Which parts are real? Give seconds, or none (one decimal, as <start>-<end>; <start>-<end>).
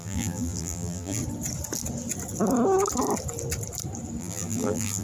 1.2-4.2